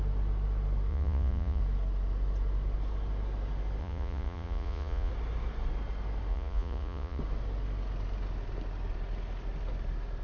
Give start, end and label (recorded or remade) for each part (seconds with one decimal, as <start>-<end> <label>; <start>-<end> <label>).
0.0-0.9 recorded; 0.9-1.6 remade; 1.6-3.8 recorded; 3.8-5.1 remade; 5.1-6.3 recorded; 6.3-7.2 remade; 7.2-10.2 recorded